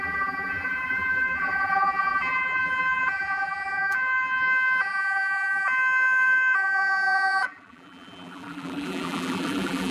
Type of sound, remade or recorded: remade